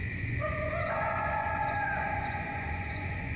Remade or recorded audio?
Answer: remade